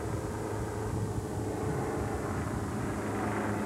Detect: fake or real real